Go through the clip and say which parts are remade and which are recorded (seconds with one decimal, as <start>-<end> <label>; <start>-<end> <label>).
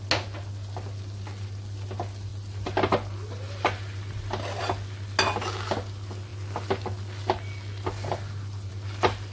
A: 0.0-9.3 recorded